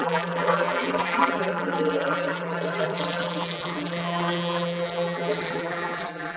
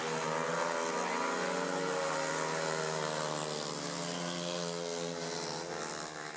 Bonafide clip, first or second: second